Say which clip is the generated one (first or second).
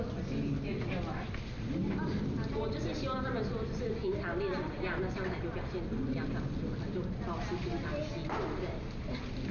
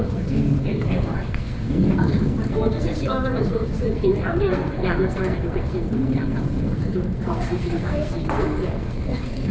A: second